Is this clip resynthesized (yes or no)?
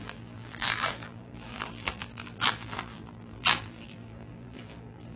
yes